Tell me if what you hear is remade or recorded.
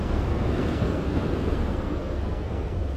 remade